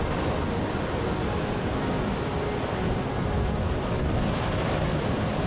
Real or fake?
real